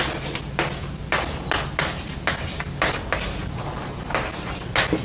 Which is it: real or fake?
real